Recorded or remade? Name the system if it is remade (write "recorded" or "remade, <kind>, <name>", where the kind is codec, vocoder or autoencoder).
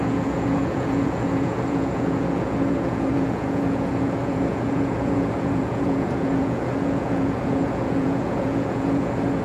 remade, vocoder, Vocos